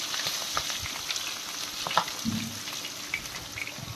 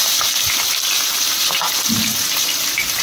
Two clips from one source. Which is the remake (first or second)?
second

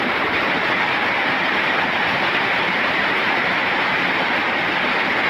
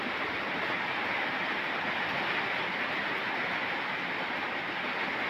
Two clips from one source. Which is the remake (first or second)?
first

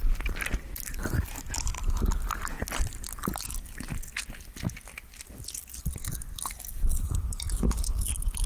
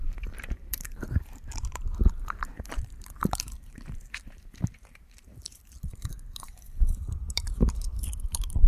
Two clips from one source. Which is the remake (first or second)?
second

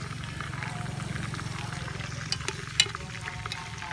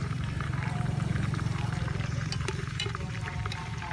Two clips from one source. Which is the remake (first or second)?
second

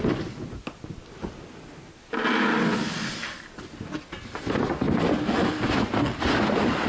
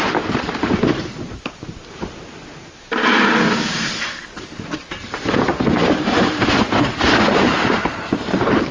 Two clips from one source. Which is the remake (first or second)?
second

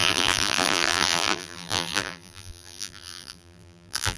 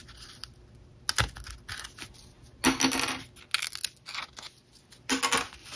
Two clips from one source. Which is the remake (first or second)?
first